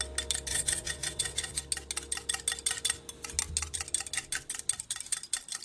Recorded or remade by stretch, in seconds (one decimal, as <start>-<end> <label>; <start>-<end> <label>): 0.0-0.5 recorded; 0.5-1.6 remade; 1.6-5.6 recorded